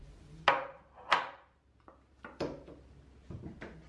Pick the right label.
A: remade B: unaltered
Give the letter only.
B